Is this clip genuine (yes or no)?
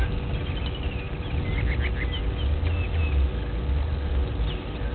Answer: yes